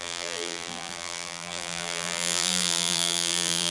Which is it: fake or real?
fake